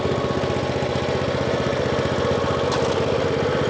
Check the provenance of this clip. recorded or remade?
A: recorded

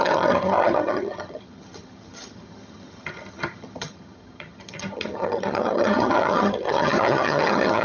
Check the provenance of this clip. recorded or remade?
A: remade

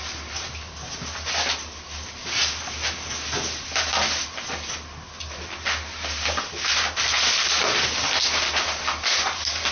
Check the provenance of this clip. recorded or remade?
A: recorded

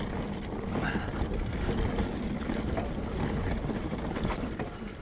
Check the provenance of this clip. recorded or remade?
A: recorded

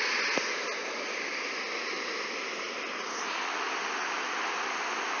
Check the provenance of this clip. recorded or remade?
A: recorded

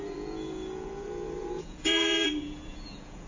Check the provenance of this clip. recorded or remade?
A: remade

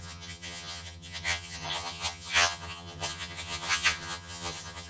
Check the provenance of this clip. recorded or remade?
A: remade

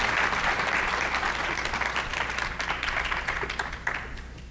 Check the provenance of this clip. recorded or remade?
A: recorded